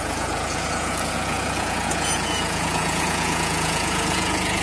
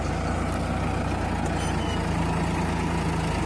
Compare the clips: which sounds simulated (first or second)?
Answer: first